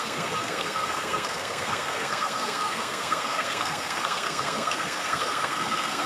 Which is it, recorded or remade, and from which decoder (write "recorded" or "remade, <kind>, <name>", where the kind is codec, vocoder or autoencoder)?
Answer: remade, codec, SNAC